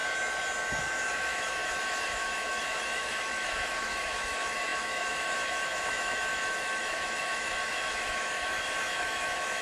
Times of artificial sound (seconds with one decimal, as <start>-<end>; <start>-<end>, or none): 0.8-9.6